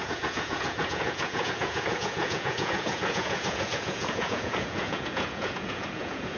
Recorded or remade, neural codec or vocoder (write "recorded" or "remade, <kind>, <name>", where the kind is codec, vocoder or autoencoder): remade, vocoder, Vocos